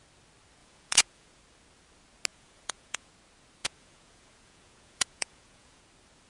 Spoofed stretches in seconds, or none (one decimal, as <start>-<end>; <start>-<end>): 0.6-1.4; 2.3-3.1; 3.6-5.8